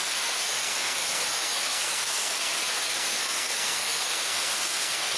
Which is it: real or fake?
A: fake